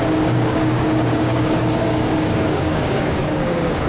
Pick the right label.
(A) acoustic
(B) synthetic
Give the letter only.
B